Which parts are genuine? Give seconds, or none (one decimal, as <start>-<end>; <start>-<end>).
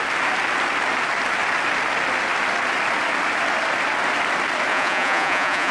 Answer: 0.0-4.7